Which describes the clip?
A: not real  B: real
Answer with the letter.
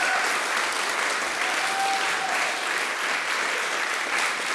B